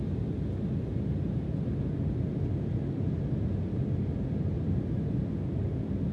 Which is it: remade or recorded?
recorded